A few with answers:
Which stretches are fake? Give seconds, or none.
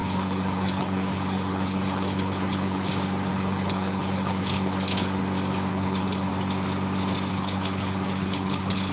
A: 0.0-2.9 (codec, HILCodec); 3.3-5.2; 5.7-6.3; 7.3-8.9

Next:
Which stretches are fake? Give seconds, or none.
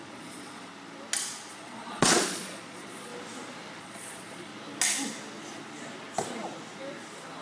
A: 0.0-0.7 (vocoder, Vocos); 1.5-3.1; 3.8-4.5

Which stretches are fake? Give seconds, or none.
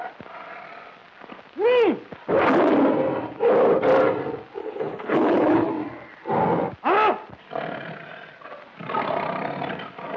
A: 4.6-5.7 (codec, HILCodec)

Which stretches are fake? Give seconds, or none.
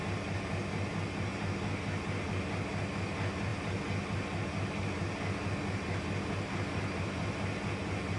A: none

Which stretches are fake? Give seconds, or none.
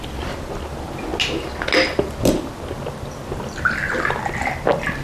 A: none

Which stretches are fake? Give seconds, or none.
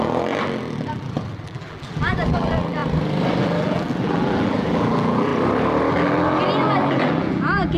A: 0.0-2.8 (vocoder, BigVGAN v2); 3.4-5.3; 5.9-7.8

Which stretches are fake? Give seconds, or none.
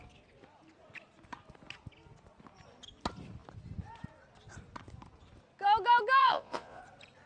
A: 6.2-6.8 (vocoder, Vocos)